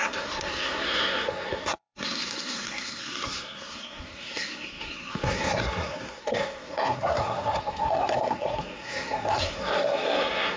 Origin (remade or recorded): remade